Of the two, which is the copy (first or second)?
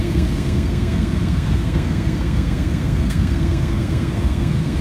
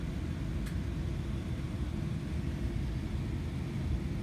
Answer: first